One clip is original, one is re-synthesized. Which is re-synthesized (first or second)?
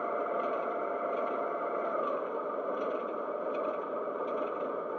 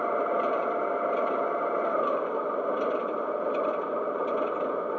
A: first